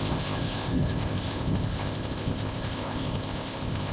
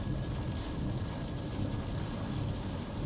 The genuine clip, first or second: second